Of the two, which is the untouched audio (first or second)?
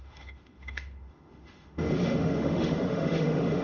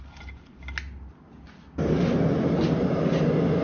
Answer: second